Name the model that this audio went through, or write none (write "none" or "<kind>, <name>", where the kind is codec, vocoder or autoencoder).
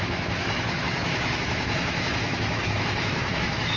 autoencoder, DAC-VAE